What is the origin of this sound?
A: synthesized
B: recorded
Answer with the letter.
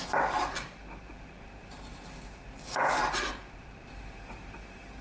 A